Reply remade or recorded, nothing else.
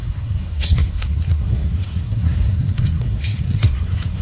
remade